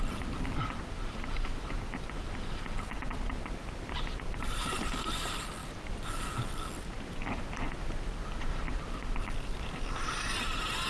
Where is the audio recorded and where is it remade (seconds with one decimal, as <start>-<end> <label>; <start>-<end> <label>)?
0.0-10.9 recorded

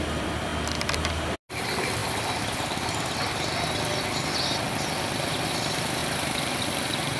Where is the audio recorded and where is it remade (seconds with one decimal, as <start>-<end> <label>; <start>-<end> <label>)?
0.0-7.2 recorded